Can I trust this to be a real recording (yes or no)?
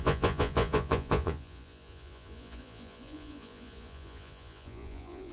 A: no